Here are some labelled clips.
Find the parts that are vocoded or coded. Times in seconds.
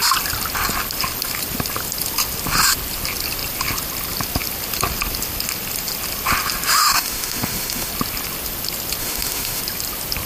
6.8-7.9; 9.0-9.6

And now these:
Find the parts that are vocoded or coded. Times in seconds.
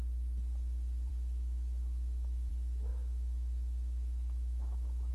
1.1-2.5; 2.9-5.1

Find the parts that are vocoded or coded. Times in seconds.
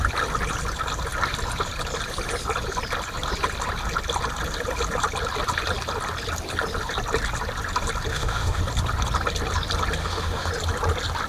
8.1-8.6; 10.0-10.5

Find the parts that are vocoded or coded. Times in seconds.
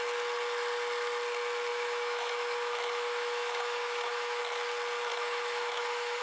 1.7-4.4; 5.1-6.2